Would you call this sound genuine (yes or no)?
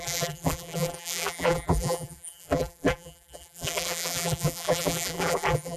no